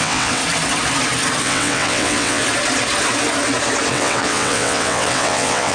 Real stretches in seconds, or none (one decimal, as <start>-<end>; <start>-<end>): 0.4-1.4; 2.4-3.9